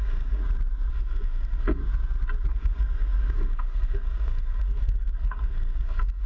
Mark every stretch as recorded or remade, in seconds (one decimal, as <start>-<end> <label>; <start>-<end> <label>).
0.0-0.4 remade; 0.4-0.9 recorded; 0.9-1.8 remade; 1.8-2.5 recorded; 2.5-6.3 remade